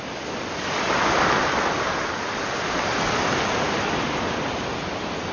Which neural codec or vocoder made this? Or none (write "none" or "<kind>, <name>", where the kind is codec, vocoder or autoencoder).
none